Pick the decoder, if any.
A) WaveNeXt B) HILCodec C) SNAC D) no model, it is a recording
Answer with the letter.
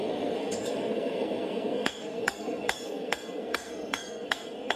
C